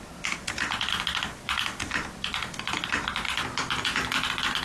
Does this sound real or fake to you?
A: real